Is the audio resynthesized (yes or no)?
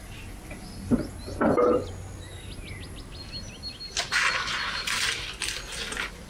no